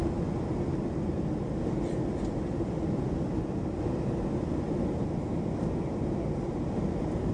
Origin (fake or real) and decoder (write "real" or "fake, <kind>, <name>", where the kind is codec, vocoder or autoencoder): real